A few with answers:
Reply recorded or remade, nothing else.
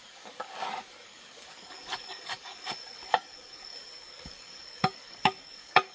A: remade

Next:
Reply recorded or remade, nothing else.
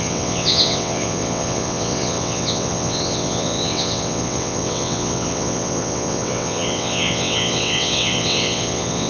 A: remade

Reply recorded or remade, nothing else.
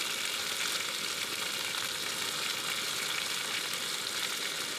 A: recorded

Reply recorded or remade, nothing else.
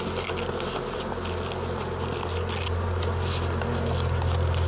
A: recorded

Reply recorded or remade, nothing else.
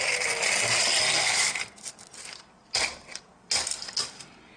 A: recorded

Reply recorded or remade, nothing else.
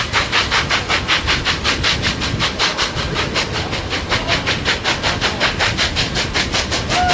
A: recorded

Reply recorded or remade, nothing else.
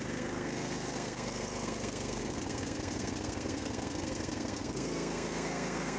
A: remade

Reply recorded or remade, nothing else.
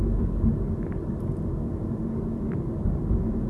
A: recorded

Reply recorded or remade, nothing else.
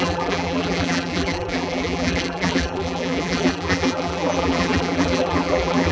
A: remade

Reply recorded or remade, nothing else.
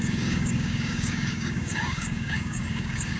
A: remade